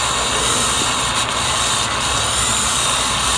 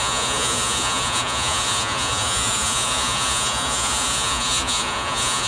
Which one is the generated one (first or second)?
second